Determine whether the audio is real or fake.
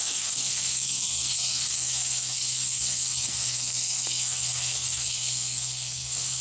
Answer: fake